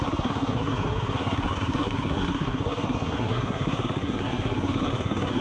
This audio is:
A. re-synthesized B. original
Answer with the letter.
A